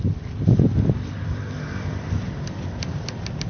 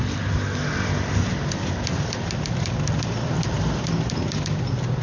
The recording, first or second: second